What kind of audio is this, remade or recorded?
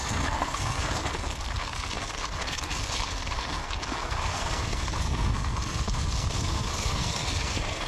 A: remade